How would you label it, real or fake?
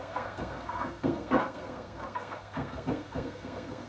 fake